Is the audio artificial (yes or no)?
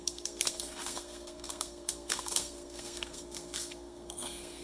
yes